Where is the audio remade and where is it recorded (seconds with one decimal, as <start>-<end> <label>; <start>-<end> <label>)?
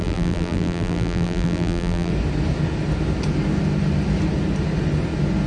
0.0-2.1 remade; 2.1-5.5 recorded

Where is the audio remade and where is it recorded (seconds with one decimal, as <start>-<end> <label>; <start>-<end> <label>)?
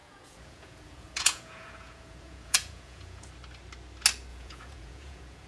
0.0-3.3 remade; 3.3-4.3 recorded; 4.3-5.5 remade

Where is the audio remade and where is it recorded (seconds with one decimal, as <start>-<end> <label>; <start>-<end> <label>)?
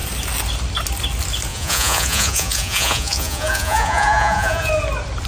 0.0-1.5 recorded; 1.5-4.7 remade; 4.7-5.3 recorded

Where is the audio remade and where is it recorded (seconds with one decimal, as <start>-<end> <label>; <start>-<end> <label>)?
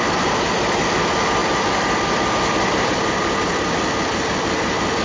0.0-5.0 recorded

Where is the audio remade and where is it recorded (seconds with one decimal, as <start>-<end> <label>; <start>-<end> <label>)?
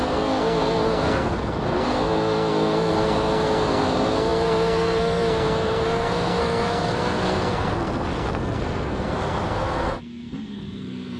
0.0-11.2 remade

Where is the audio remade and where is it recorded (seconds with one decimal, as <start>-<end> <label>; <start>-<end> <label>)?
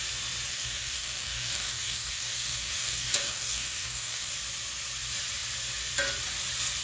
0.0-0.5 recorded; 0.5-4.3 remade; 4.3-6.8 recorded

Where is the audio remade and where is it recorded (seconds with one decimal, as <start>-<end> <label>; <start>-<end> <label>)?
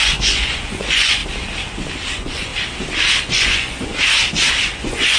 0.0-1.2 remade; 1.2-2.1 recorded; 2.1-2.5 remade; 2.5-3.2 recorded; 3.2-3.9 remade; 3.9-4.6 recorded; 4.6-5.2 remade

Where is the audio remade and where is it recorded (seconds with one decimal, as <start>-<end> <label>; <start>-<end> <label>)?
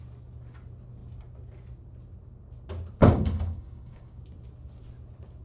0.0-3.0 recorded; 3.0-4.2 remade; 4.2-5.4 recorded